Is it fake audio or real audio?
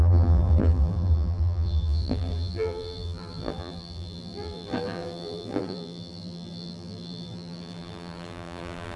fake